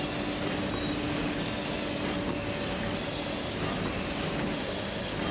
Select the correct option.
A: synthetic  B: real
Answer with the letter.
B